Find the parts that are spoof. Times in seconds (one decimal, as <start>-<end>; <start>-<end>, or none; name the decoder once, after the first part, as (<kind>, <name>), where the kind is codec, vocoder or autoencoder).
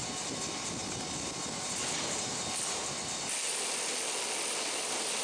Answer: none